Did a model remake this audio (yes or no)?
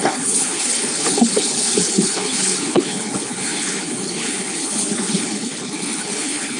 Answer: yes